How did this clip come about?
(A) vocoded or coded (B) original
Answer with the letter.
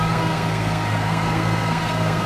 A